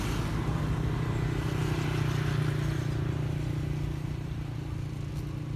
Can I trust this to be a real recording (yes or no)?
yes